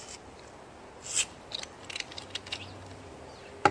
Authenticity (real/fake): real